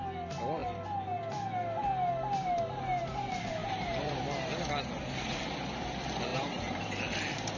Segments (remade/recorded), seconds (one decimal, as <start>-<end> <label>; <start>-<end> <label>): 0.0-3.6 recorded; 3.6-4.2 remade; 4.2-6.3 recorded; 6.3-7.0 remade; 7.0-7.6 recorded